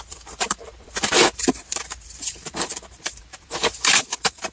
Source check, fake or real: fake